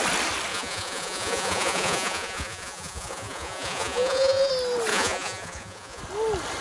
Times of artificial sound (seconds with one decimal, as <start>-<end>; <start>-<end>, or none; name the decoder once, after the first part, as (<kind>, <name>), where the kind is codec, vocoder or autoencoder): 0.5-4.5 (vocoder, Vocos); 4.9-6.0